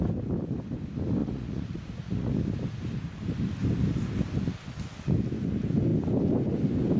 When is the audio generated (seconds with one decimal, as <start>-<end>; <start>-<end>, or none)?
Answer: 1.2-2.3